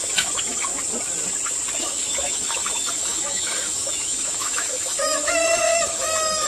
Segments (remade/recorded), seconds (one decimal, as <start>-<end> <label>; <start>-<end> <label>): 0.0-0.7 remade; 0.7-1.8 recorded; 1.8-6.5 remade